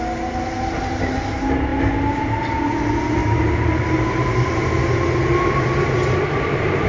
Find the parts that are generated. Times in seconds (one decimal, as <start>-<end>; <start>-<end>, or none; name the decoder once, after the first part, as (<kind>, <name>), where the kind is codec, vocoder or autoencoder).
none